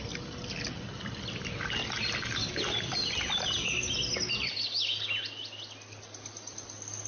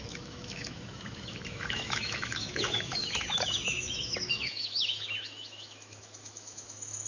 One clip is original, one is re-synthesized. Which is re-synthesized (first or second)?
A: second